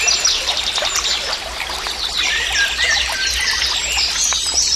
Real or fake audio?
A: real